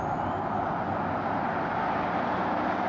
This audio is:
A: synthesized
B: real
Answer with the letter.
B